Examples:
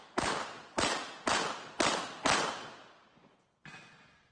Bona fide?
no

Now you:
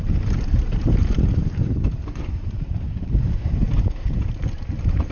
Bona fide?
no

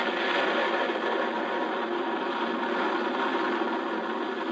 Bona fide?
yes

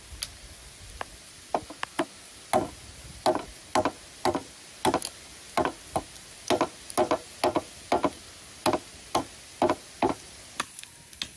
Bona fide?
yes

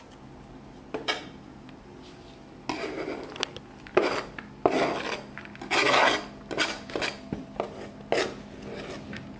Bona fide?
yes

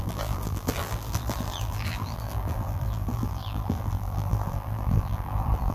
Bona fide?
no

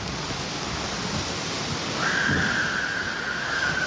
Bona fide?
yes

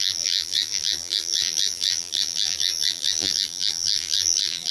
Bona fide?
no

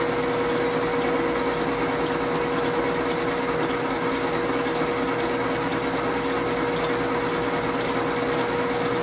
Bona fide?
yes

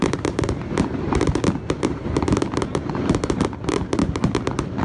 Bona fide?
no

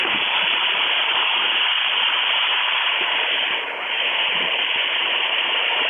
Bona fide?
no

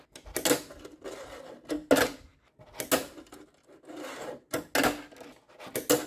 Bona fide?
yes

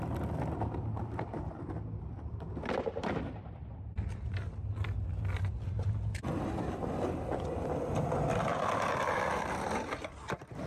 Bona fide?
no